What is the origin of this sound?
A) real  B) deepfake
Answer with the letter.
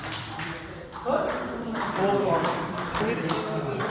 B